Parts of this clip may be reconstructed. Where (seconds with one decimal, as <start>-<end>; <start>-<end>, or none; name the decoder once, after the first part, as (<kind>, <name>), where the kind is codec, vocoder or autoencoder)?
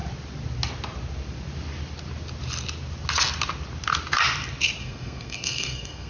4.8-6.1 (codec, SNAC)